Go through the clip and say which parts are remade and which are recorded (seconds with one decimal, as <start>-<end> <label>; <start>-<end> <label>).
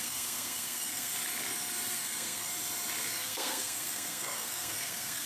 0.0-1.1 remade; 1.1-1.9 recorded; 1.9-2.5 remade; 2.5-3.1 recorded; 3.1-5.3 remade